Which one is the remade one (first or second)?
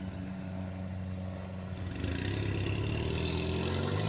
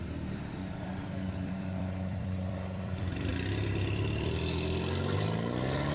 second